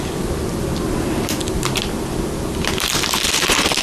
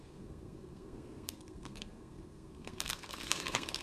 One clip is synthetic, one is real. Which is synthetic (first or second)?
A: second